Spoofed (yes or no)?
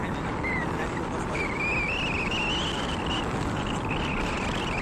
no